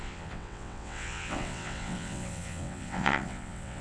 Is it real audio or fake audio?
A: fake